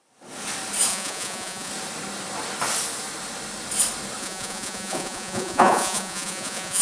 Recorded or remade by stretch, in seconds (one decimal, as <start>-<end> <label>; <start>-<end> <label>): 0.0-0.9 recorded; 0.9-1.7 remade; 1.7-4.2 recorded; 4.2-6.8 remade